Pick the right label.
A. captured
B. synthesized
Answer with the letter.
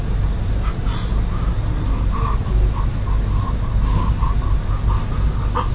A